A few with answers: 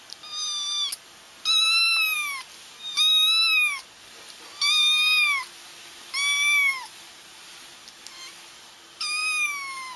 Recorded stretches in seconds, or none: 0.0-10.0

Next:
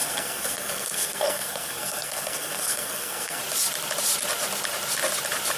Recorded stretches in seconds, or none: 3.4-5.6

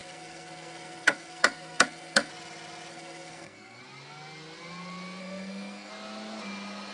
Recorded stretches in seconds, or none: 2.3-2.9; 3.8-5.2; 5.9-6.9